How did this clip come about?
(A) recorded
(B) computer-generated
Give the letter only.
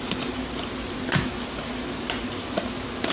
B